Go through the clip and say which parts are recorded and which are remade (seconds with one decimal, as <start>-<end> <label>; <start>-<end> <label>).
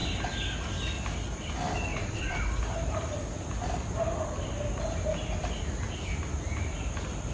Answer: 0.0-1.9 recorded; 1.9-2.6 remade; 2.6-7.3 recorded